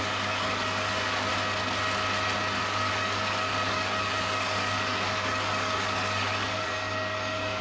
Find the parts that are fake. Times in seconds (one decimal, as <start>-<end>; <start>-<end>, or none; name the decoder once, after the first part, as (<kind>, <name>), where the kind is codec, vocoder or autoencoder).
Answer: 0.0-1.3 (codec, DAC); 2.6-7.6